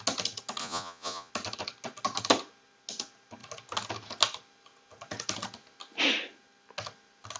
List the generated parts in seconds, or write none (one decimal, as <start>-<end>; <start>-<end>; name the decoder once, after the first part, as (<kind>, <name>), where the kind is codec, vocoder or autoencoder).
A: 0.6-1.3 (vocoder, Vocos)